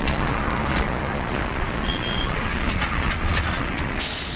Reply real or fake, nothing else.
fake